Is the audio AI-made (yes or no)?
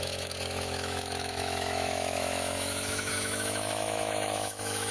yes